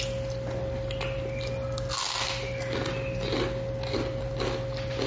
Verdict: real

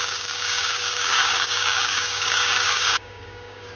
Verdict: fake